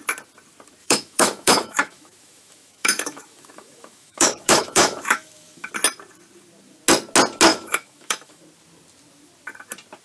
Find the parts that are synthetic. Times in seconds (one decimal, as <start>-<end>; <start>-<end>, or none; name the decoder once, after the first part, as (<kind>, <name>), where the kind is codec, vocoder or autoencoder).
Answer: 0.8-5.7 (autoencoder, DAC-VAE); 7.5-8.4